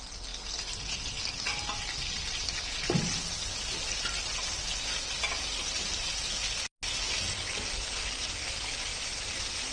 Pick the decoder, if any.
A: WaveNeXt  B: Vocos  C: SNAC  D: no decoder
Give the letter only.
D